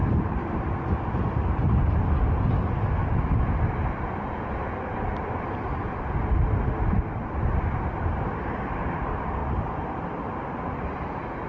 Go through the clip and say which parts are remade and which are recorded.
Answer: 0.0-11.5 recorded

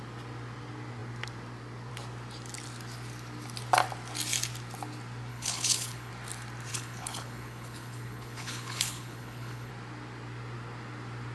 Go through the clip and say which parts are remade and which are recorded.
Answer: 0.0-5.3 recorded; 5.3-6.1 remade; 6.1-6.7 recorded; 6.7-9.7 remade; 9.7-11.3 recorded

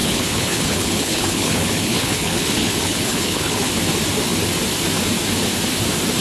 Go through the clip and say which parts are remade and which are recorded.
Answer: 0.0-3.7 remade; 3.7-6.2 recorded

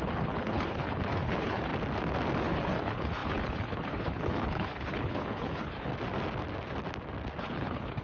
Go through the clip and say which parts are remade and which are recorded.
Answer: 0.0-1.7 remade; 1.7-2.4 recorded; 2.4-5.9 remade; 5.9-7.4 recorded; 7.4-8.0 remade

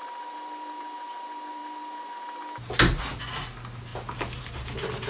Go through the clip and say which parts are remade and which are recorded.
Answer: 0.0-5.1 recorded

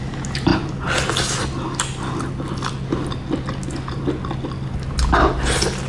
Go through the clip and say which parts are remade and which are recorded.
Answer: 0.0-5.9 recorded

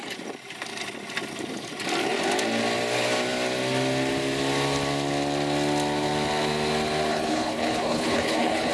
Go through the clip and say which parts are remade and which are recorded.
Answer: 0.0-7.1 recorded; 7.1-8.7 remade